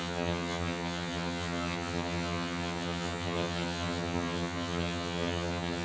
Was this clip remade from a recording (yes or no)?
yes